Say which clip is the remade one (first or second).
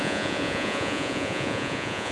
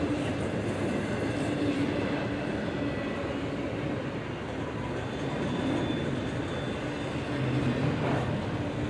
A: first